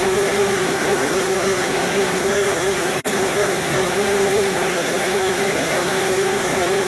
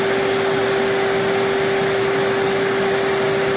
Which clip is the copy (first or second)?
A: first